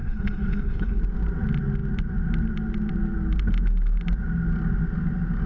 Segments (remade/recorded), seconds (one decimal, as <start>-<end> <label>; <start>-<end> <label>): 0.0-1.0 remade; 1.0-5.5 recorded